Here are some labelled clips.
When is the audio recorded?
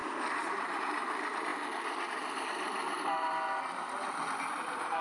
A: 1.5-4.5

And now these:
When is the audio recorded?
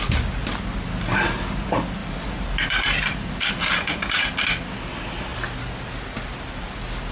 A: 0.0-2.0; 3.5-7.1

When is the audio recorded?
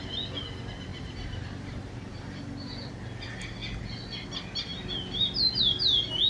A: 0.0-0.9; 2.4-6.3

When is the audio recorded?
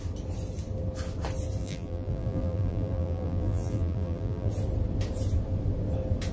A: 0.0-1.6; 4.5-6.3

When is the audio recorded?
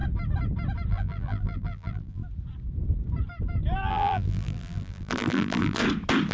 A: 0.0-0.9; 2.2-3.9; 5.8-6.3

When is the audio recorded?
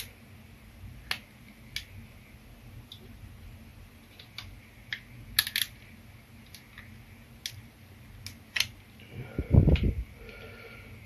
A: 0.0-11.1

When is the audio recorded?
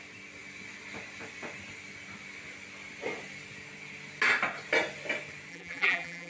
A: 0.0-5.5